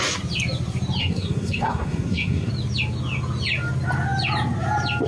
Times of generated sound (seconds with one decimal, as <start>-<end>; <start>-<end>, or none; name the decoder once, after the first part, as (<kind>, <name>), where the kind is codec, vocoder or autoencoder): 1.0-2.5 (codec, SNAC)